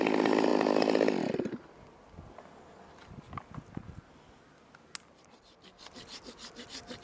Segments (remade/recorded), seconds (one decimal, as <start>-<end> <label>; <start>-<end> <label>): 0.0-7.0 recorded